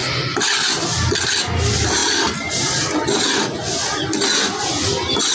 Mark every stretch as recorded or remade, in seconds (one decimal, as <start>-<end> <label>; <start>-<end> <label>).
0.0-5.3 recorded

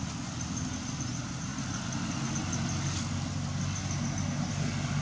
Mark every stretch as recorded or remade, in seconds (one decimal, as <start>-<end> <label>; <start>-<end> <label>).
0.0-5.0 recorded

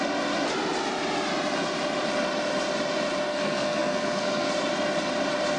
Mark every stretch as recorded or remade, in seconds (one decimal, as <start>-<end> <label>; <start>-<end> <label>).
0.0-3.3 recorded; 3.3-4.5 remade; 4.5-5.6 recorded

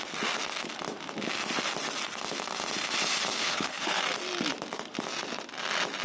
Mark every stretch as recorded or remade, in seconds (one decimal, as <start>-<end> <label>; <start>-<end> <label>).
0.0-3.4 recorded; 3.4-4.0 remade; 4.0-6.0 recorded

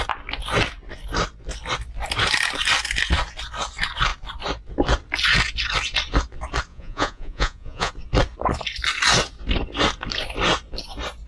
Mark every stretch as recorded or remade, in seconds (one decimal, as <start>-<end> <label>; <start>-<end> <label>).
0.0-6.7 recorded; 6.7-7.9 remade; 7.9-11.3 recorded

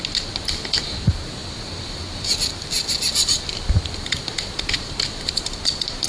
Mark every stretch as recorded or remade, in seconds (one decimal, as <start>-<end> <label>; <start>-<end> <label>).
0.0-6.1 recorded

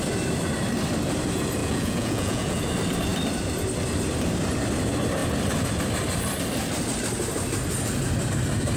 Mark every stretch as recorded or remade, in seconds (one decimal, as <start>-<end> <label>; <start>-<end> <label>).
0.0-1.6 recorded; 1.6-2.6 remade; 2.6-8.8 recorded

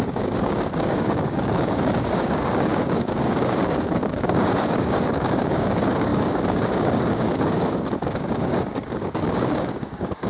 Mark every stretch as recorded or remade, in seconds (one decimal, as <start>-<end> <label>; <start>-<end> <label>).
0.0-10.3 remade